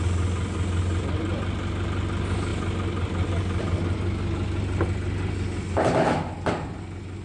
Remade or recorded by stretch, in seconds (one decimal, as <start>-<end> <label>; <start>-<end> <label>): 0.0-7.2 recorded